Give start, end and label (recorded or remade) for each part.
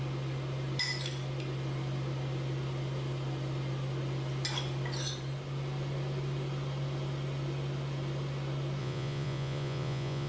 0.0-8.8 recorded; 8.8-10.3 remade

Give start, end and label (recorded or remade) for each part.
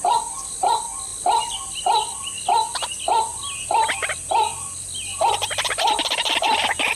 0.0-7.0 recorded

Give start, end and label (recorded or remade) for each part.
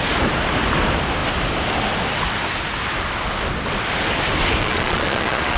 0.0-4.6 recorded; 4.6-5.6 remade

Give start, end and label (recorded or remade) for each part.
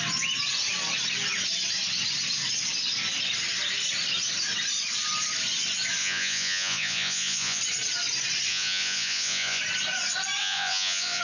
0.0-6.0 recorded; 6.0-7.6 remade; 7.6-8.5 recorded; 8.5-9.6 remade; 9.6-10.4 recorded; 10.4-11.2 remade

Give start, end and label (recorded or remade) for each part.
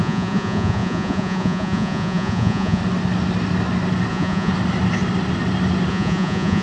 0.0-2.8 remade; 2.8-4.1 recorded; 4.1-4.5 remade; 4.5-5.9 recorded; 5.9-6.6 remade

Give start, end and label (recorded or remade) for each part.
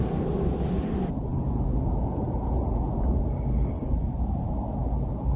0.0-1.3 recorded; 1.3-3.2 remade; 3.2-5.4 recorded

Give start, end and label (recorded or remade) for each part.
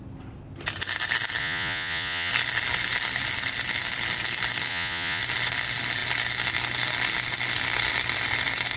0.0-1.4 recorded; 1.4-2.3 remade; 2.3-4.7 recorded; 4.7-5.2 remade; 5.2-8.8 recorded